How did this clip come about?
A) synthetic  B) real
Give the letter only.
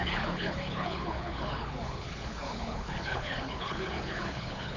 A